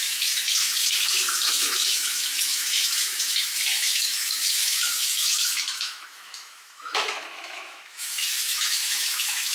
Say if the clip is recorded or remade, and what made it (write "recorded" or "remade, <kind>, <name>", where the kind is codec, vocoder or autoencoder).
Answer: remade, autoencoder, DAC-VAE